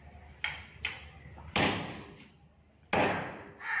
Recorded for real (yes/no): yes